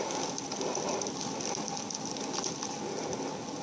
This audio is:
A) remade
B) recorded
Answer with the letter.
B